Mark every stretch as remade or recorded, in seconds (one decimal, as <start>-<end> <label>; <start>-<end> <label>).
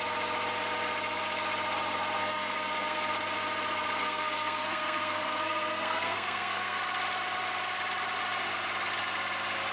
0.0-2.2 recorded; 2.2-3.1 remade; 3.1-4.0 recorded; 4.0-6.8 remade; 6.8-9.7 recorded